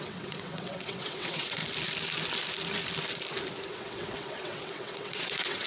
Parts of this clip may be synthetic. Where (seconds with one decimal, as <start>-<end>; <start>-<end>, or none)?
0.0-1.6; 3.7-5.7